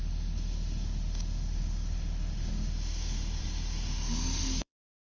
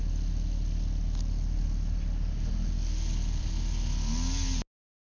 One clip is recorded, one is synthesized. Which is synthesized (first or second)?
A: first